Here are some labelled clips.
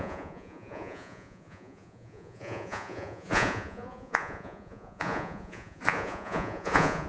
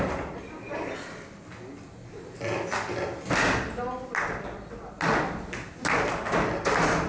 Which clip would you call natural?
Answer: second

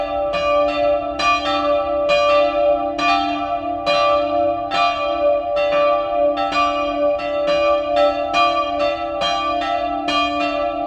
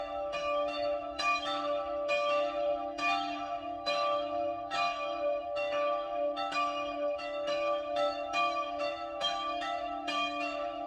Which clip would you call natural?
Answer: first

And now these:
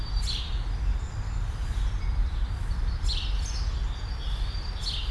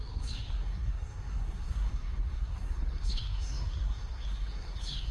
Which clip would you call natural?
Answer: first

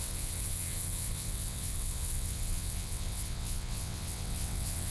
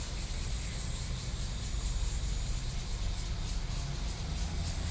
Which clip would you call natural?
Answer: second